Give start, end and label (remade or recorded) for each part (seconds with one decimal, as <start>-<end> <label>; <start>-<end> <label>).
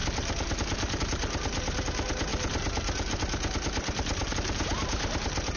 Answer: 0.0-5.6 recorded